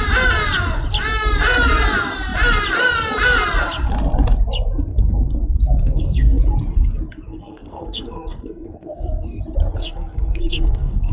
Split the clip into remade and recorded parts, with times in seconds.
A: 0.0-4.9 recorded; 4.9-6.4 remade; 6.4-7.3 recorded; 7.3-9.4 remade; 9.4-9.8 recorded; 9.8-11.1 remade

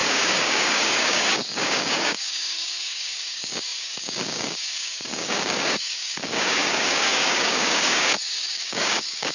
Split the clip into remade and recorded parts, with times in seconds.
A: 0.0-9.3 remade

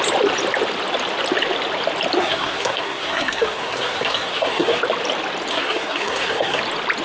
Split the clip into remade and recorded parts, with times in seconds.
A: 0.0-2.2 recorded; 2.2-4.8 remade; 4.8-5.5 recorded; 5.5-6.6 remade; 6.6-7.0 recorded

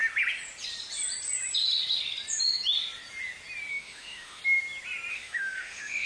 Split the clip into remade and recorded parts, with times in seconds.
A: 0.0-3.7 recorded; 3.7-4.4 remade; 4.4-5.1 recorded; 5.1-6.1 remade

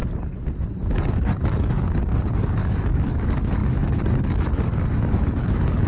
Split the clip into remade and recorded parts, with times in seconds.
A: 0.0-0.7 recorded; 0.7-5.9 remade

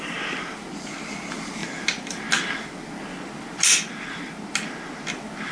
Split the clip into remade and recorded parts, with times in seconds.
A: 0.0-5.5 recorded

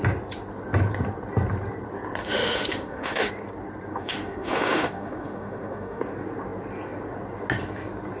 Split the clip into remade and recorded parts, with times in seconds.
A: 0.0-2.2 recorded; 2.2-3.3 remade; 3.3-3.9 recorded; 3.9-6.0 remade; 6.0-8.2 recorded

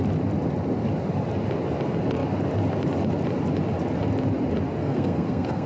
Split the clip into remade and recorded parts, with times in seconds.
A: 0.0-4.8 recorded; 4.8-5.7 remade